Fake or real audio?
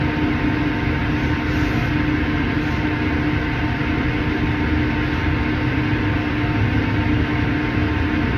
real